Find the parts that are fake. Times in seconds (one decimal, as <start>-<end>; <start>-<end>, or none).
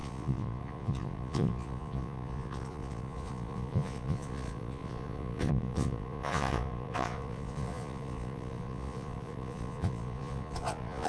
0.0-11.1